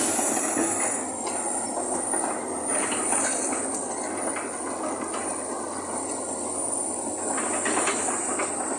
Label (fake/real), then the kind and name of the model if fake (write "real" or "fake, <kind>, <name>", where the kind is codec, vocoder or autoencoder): real